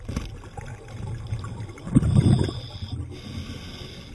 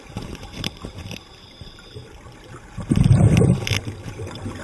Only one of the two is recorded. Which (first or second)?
first